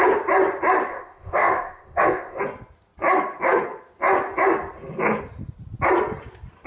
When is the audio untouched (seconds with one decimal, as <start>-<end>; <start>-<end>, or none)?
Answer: 0.0-0.9; 2.4-6.7